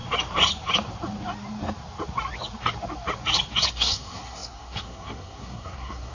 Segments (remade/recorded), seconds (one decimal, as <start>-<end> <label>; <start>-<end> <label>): 0.0-3.7 recorded; 3.7-6.1 remade